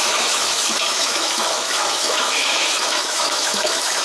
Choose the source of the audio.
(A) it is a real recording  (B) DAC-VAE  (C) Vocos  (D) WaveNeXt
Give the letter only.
B